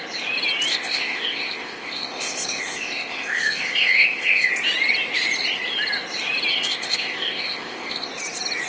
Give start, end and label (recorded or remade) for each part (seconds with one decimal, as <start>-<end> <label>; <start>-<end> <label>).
0.0-0.7 recorded; 0.7-4.5 remade; 4.5-6.5 recorded; 6.5-8.1 remade; 8.1-8.7 recorded